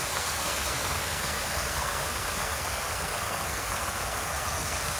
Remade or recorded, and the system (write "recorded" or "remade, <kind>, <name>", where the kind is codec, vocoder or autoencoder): remade, codec, SNAC